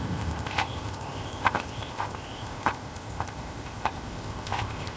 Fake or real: fake